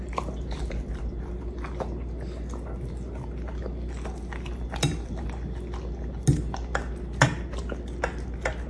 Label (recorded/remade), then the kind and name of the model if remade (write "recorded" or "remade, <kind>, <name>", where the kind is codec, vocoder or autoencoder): recorded